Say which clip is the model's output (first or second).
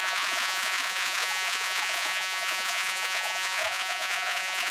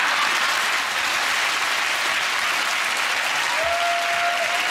first